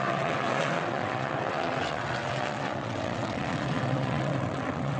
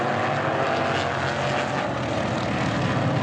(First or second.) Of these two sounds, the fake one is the first